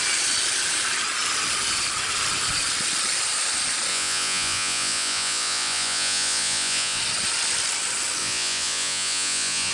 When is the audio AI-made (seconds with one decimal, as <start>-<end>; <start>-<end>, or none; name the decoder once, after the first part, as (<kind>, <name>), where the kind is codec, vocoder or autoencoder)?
3.9-7.0 (vocoder, Vocos); 8.2-9.7

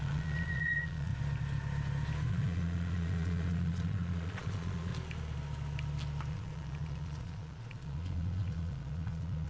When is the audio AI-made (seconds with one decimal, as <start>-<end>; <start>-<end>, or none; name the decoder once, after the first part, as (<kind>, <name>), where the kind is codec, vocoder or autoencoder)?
0.0-1.1 (vocoder, Vocos); 2.3-4.9; 6.3-9.5

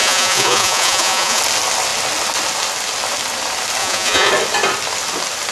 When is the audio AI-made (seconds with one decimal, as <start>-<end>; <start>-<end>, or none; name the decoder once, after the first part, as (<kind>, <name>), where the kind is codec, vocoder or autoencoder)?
0.0-1.4 (vocoder, Vocos); 3.8-4.3

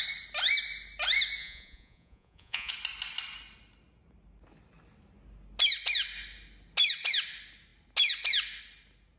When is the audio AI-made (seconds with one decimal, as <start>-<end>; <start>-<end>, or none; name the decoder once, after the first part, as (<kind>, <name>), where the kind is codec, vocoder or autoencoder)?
1.4-2.7 (vocoder, Vocos)

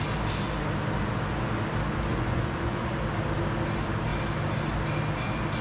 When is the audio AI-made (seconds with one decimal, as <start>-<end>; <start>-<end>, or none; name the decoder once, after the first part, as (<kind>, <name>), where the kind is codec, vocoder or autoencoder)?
2.1-2.9 (vocoder, Vocos)

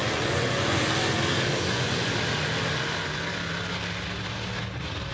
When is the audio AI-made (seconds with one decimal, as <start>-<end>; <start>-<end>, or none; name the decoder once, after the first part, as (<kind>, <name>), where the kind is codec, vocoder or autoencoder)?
0.0-0.8 (vocoder, Vocos); 1.5-2.1